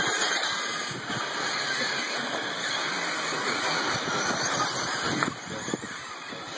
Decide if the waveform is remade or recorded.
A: recorded